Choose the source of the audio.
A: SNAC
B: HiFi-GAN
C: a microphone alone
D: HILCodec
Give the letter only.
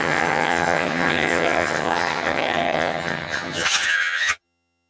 B